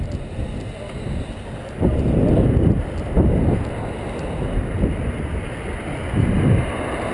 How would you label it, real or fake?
real